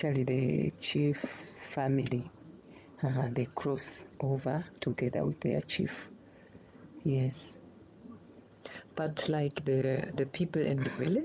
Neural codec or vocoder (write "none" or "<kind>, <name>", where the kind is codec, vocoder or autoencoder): vocoder, HiFi-GAN